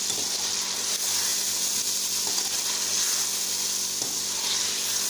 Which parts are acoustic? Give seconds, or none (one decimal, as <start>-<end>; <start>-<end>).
0.0-5.1

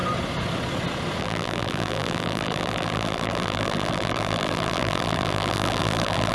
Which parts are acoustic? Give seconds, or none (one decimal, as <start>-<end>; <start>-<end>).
0.0-1.2

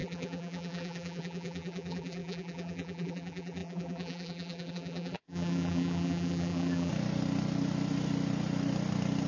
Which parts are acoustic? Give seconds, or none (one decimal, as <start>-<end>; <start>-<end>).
6.9-9.3

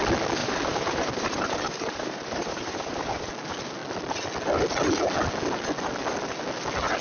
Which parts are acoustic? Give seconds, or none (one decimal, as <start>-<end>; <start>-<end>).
0.0-0.4; 3.3-7.0

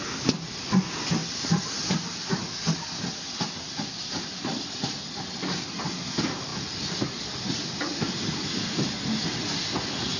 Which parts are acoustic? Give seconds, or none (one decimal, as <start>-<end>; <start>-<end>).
0.0-10.2

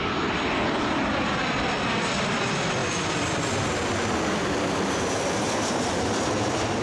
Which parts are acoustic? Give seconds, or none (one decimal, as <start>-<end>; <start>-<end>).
none

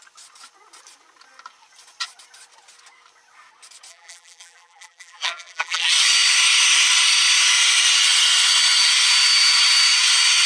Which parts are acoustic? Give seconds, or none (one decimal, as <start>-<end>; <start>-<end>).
0.0-3.9; 5.9-10.5